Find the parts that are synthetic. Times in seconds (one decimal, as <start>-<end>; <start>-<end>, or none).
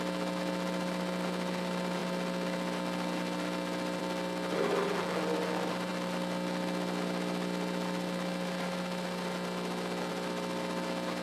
none